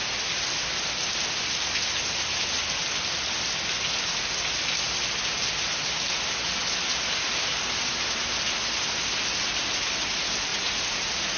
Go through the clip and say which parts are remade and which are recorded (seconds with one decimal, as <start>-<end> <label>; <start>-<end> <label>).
0.0-10.5 recorded; 10.5-11.4 remade